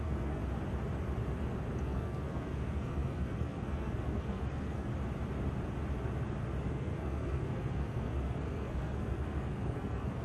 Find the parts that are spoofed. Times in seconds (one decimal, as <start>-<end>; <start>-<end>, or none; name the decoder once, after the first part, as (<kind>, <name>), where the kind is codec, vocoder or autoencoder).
0.0-0.4 (codec, SNAC); 1.8-4.9; 6.7-10.2